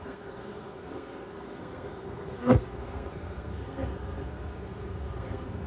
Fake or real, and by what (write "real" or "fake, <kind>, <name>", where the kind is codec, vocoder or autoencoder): fake, codec, SNAC